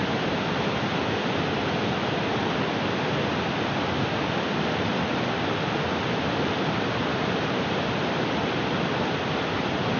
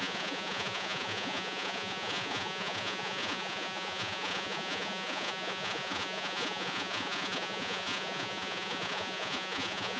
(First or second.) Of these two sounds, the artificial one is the second